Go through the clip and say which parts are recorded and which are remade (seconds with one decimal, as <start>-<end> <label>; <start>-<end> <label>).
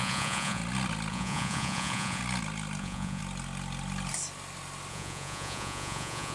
0.0-0.6 remade; 0.6-1.1 recorded; 1.1-2.2 remade; 2.2-2.8 recorded; 2.8-3.2 remade; 3.2-4.9 recorded; 4.9-6.3 remade